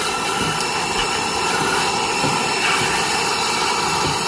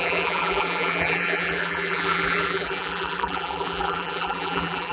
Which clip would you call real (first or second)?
first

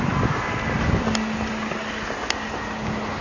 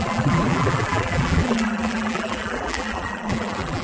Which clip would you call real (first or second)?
first